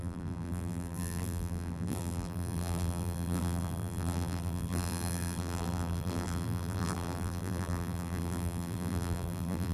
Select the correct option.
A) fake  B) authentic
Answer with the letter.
A